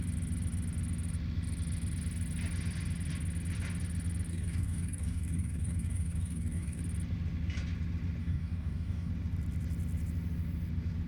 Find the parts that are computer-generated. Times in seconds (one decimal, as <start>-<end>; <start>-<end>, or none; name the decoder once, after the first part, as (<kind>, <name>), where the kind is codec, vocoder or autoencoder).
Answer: 4.3-6.8 (codec, DAC); 8.2-9.1